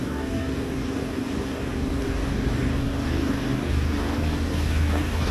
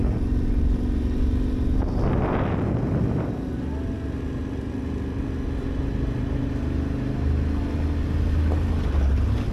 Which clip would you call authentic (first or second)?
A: second